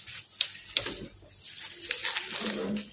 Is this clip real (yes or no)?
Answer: yes